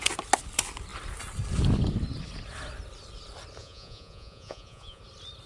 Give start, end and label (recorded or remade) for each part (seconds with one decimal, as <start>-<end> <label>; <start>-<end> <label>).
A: 0.0-3.6 recorded; 3.6-5.0 remade; 5.0-5.5 recorded